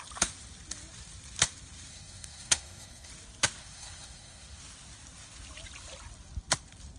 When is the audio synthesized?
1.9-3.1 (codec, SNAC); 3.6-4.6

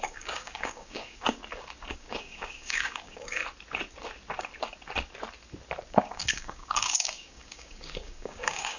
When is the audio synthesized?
0.0-1.4 (codec, DAC); 1.9-3.4; 5.9-8.8

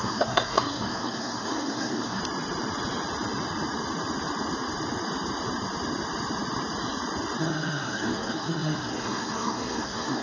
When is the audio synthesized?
0.0-2.2 (codec, SNAC); 7.4-10.2

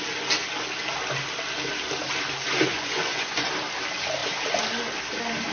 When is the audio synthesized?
2.7-3.5 (vocoder, Vocos)

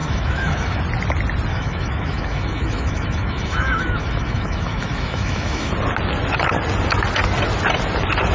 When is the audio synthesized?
0.0-0.8 (autoencoder, DAC-VAE); 1.5-5.7

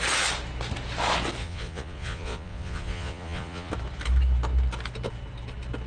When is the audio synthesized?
1.4-3.7 (vocoder, Vocos)

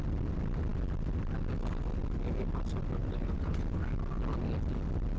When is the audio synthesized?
3.0-3.8 (vocoder, Vocos)